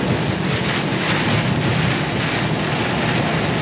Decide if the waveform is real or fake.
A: real